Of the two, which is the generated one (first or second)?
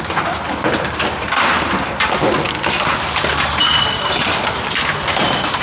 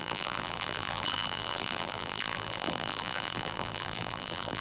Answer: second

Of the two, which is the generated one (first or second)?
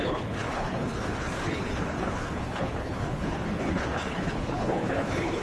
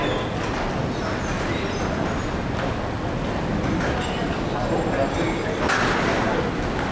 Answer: first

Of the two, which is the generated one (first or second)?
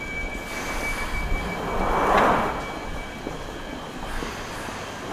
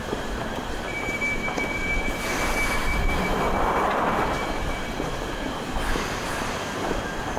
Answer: second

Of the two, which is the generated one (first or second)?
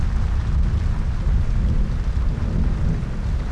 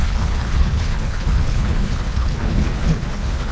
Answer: second